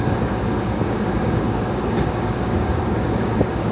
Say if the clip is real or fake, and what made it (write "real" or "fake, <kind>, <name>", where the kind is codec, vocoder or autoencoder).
fake, codec, DAC